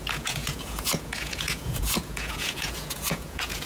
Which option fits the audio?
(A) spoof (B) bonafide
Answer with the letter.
A